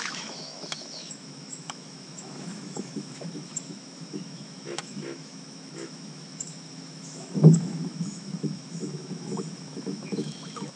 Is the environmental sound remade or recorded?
remade